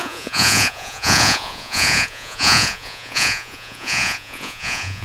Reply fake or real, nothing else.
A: fake